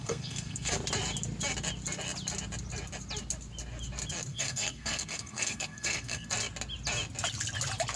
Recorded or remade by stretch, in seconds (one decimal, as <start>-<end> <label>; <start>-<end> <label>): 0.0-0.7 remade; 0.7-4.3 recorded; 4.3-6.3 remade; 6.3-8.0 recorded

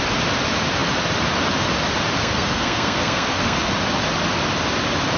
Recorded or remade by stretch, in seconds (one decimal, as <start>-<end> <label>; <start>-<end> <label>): 0.0-2.2 recorded; 2.2-3.7 remade; 3.7-5.2 recorded

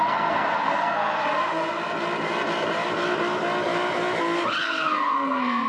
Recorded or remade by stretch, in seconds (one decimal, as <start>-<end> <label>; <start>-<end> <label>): 0.0-1.2 remade; 1.2-4.6 recorded; 4.6-5.7 remade